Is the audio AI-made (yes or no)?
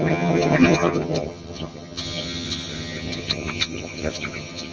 yes